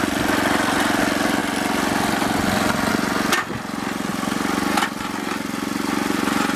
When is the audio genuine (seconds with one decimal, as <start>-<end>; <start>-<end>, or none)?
0.0-6.6

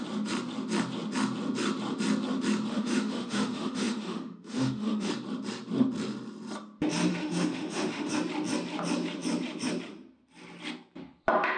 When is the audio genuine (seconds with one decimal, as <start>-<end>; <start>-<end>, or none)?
0.0-2.7; 5.1-7.1; 8.1-11.6

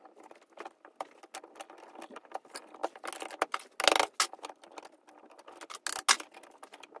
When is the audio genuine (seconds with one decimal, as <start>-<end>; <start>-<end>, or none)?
0.0-7.0

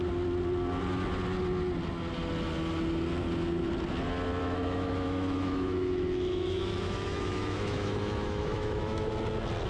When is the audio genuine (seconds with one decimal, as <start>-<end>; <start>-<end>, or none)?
0.0-4.4; 9.1-9.7

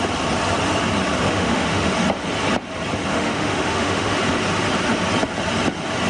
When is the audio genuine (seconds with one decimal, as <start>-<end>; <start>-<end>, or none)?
0.0-1.3; 1.9-3.1; 4.2-6.1